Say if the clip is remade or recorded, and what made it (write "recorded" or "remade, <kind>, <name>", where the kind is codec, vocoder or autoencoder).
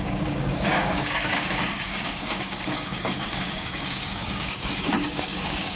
remade, codec, DAC